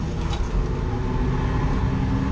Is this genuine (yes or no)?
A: yes